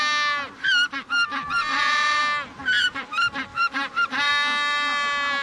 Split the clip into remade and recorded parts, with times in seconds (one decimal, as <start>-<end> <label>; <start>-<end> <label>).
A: 0.0-1.7 recorded; 1.7-2.2 remade; 2.2-3.5 recorded; 3.5-4.3 remade; 4.3-5.4 recorded